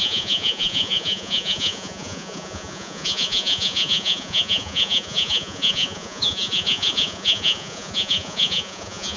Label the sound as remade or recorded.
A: remade